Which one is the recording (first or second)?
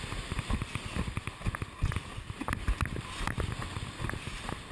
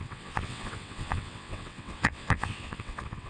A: first